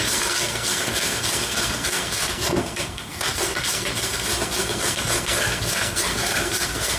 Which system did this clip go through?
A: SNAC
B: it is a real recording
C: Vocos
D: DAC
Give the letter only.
A